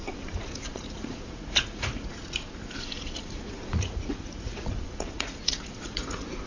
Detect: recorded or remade remade